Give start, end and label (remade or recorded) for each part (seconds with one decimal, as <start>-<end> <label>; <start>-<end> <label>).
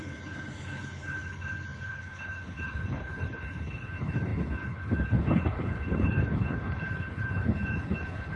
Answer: 0.0-8.4 remade